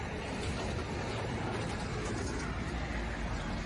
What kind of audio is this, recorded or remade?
recorded